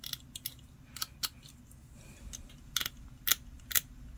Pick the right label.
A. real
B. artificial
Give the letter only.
A